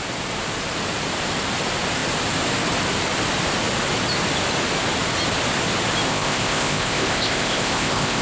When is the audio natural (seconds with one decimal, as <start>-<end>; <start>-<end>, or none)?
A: 0.0-6.1